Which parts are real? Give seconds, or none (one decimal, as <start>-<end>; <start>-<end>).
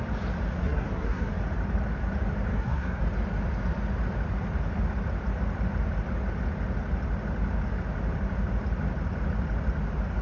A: 0.0-0.6; 1.3-2.5; 3.0-10.2